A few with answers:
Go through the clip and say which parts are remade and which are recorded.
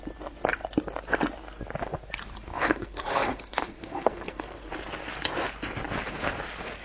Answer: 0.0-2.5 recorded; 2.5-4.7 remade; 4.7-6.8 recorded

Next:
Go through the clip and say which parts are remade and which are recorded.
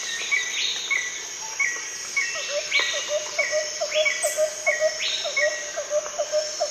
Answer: 0.0-6.7 recorded